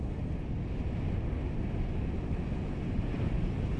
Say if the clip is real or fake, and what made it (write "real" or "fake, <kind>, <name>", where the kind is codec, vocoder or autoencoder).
real